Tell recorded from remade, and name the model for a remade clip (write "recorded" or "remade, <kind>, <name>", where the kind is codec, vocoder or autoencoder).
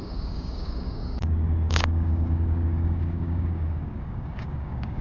remade, codec, DAC